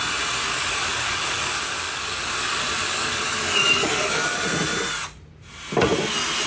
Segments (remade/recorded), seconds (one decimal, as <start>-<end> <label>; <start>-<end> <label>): 0.0-0.5 recorded; 0.5-4.4 remade; 4.4-6.5 recorded